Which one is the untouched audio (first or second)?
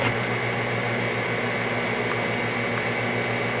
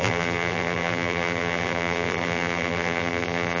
first